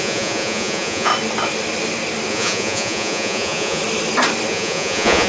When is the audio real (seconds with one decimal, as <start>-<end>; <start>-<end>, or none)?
1.1-2.3; 3.8-4.5